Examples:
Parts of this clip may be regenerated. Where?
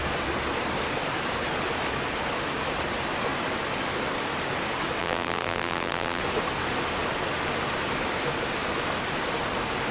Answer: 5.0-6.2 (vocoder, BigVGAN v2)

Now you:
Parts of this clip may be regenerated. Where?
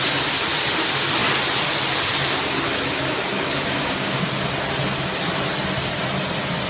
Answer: 3.3-4.3 (codec, DAC)